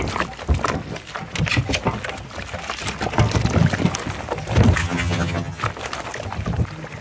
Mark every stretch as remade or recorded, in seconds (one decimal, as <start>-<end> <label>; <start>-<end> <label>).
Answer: 0.0-4.8 recorded; 4.8-5.6 remade; 5.6-7.0 recorded